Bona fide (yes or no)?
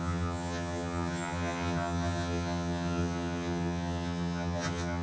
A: no